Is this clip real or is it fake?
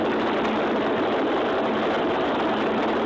real